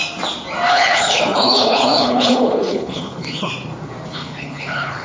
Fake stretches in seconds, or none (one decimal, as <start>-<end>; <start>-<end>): 0.7-3.5; 4.1-5.0